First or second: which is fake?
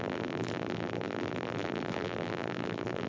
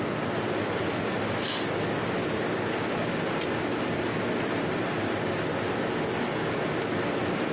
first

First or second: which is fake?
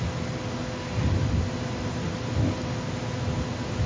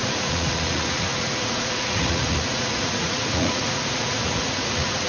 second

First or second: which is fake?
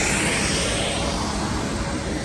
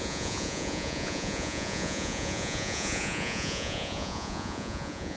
second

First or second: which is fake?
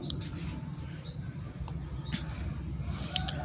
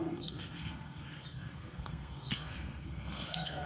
second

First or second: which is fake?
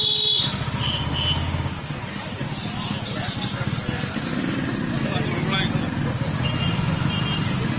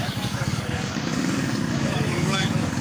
second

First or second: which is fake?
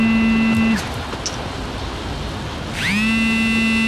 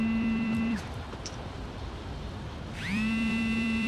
second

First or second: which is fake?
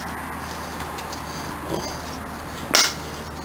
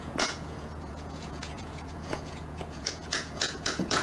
second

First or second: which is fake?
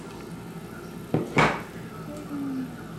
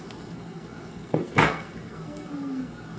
second